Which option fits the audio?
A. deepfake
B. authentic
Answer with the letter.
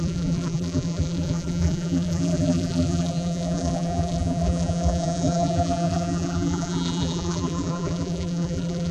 A